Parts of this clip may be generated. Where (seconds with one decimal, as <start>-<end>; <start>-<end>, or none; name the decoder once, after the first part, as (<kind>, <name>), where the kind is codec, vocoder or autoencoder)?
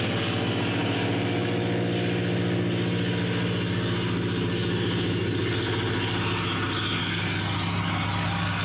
none